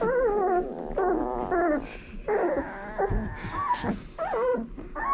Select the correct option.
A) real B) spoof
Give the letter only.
A